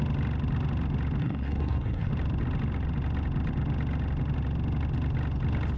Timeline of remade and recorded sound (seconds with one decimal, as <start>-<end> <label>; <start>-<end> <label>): 0.0-1.2 recorded; 1.2-2.1 remade; 2.1-5.8 recorded

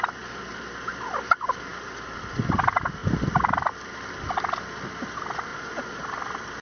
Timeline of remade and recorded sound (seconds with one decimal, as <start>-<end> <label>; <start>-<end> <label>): 0.0-5.5 recorded; 5.5-6.0 remade; 6.0-6.6 recorded

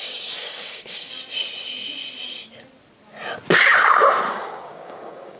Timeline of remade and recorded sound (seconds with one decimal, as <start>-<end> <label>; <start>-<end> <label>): 0.0-1.1 remade; 1.1-4.3 recorded; 4.3-5.4 remade

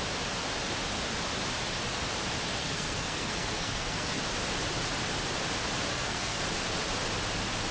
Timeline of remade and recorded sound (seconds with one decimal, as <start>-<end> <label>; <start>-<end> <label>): 0.0-2.6 recorded; 2.6-4.2 remade; 4.2-5.9 recorded; 5.9-6.4 remade; 6.4-7.7 recorded